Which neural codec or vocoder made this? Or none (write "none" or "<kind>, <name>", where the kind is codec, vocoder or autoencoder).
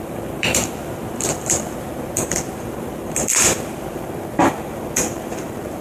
vocoder, BigVGAN v2